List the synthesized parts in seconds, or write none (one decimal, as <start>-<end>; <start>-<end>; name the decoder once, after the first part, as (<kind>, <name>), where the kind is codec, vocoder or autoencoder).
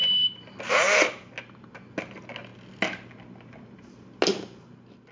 none